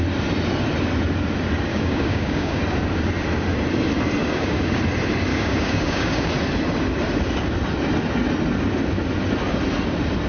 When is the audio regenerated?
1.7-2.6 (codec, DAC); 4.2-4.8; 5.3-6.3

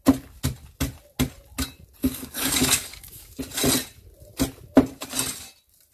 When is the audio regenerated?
2.0-3.4 (codec, DAC)